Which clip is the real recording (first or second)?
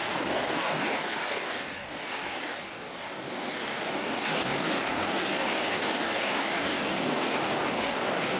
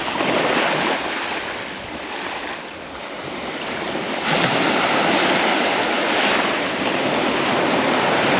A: second